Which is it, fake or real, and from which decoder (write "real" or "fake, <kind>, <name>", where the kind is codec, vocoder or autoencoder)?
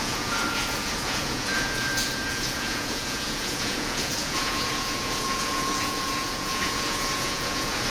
fake, vocoder, Vocos